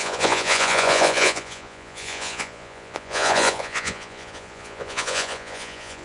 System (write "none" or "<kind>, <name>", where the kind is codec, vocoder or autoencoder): vocoder, Vocos